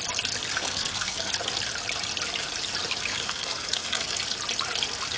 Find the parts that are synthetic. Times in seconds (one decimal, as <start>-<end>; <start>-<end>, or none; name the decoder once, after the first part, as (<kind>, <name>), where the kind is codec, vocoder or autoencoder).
0.5-1.3 (codec, SNAC); 3.1-4.2

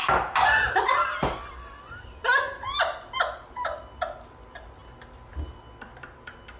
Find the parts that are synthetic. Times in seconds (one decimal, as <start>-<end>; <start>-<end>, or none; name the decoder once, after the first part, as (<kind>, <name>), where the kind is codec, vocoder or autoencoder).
none

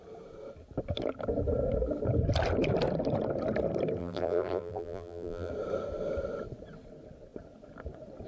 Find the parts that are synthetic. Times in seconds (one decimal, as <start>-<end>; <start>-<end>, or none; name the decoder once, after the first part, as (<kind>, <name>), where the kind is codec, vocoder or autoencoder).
4.0-5.5 (vocoder, BigVGAN v2)